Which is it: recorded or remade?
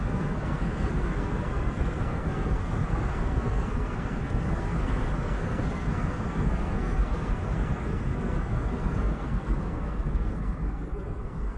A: remade